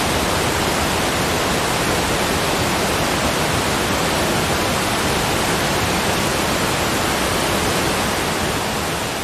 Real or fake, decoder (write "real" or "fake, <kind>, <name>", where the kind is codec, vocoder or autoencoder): real